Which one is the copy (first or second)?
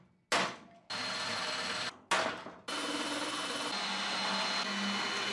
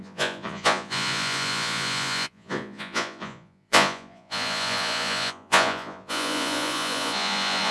second